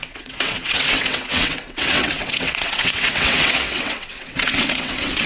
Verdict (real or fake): fake